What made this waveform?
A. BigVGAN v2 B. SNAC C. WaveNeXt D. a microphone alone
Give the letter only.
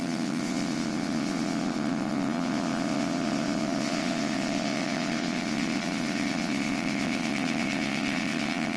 C